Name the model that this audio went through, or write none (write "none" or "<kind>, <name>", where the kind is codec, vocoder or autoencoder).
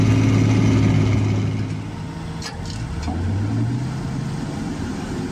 none